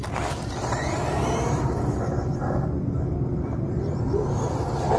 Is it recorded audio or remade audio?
recorded